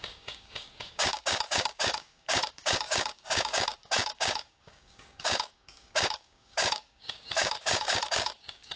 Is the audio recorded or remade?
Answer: remade